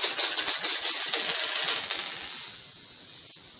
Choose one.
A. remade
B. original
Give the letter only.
A